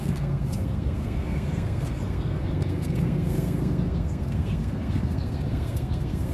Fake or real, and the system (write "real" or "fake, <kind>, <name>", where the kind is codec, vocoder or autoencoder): fake, codec, SNAC